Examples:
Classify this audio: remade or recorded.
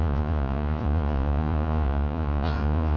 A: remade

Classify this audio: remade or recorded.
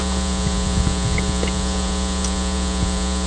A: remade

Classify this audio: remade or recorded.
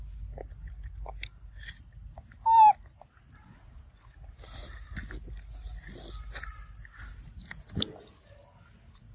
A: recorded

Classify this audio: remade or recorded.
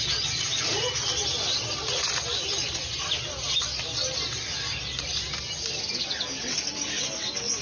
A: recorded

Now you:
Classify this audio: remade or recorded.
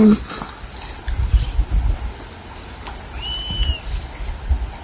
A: recorded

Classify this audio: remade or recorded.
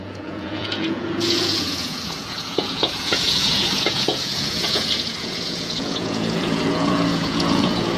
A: remade